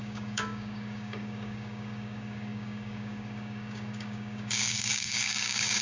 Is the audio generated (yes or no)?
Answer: yes